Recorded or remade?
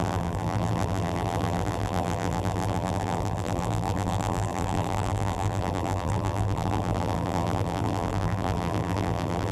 remade